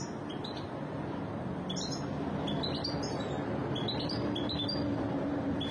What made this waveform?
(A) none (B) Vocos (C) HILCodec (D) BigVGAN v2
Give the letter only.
A